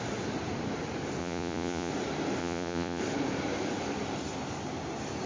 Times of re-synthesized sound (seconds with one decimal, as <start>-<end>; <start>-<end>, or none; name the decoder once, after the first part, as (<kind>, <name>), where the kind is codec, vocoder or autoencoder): 1.2-1.9 (vocoder, Vocos); 2.4-3.0